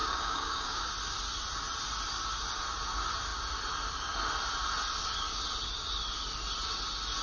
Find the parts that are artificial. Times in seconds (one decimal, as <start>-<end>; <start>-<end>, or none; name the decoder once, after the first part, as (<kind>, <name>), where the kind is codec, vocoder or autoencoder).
0.0-0.8 (codec, DAC)